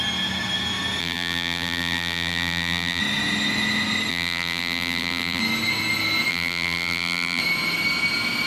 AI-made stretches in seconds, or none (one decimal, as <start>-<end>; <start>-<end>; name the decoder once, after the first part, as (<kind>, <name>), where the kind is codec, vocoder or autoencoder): 1.0-3.0 (vocoder, BigVGAN v2); 4.1-5.4; 6.3-7.4